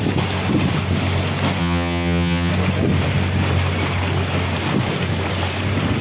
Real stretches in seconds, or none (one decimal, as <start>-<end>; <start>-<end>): 0.0-1.6; 2.5-6.0